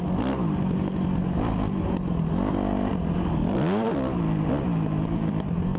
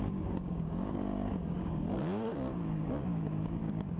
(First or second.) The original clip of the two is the first